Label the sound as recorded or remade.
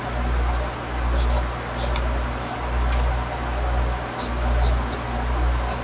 recorded